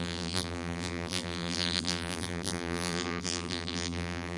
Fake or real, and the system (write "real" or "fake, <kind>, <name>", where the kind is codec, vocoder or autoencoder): fake, vocoder, BigVGAN v2